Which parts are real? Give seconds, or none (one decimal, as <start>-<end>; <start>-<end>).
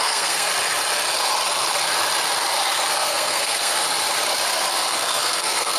0.5-2.9; 3.7-4.9